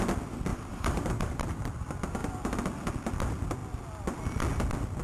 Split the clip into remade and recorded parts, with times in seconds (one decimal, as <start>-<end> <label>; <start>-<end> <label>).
0.0-0.5 recorded; 0.5-1.6 remade; 1.6-5.0 recorded